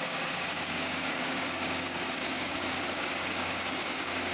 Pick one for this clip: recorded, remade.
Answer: remade